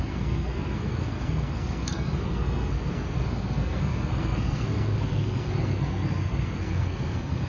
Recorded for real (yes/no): no